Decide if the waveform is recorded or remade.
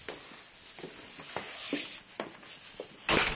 recorded